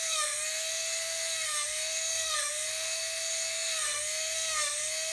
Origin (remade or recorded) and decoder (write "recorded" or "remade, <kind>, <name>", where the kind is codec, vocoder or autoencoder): remade, codec, SNAC